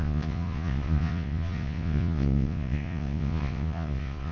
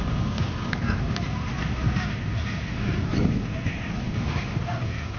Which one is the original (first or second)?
second